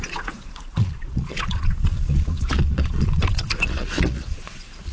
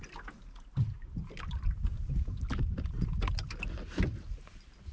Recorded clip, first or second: second